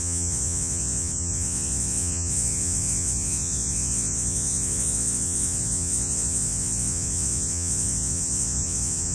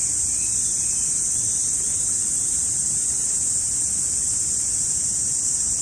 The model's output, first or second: first